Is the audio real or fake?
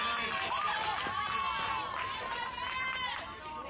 real